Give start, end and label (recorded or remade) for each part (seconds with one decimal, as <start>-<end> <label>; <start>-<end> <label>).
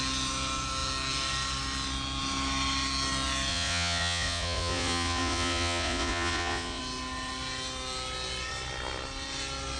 0.0-3.5 recorded; 3.5-6.8 remade; 6.8-9.8 recorded